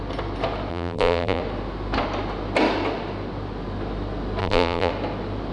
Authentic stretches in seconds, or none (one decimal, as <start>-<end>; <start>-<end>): 0.0-0.7; 1.4-4.4; 4.9-5.5